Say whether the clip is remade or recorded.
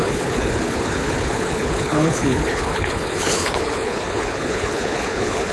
remade